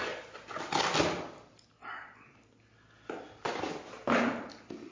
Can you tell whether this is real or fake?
real